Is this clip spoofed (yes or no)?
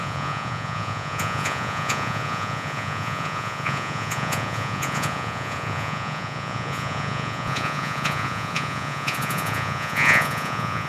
yes